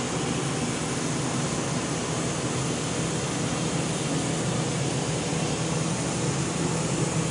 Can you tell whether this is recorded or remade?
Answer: recorded